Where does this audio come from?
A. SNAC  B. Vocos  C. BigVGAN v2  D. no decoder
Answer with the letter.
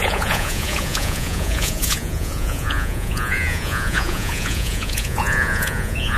B